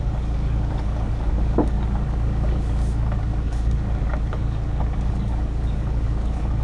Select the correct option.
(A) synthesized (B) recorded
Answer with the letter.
A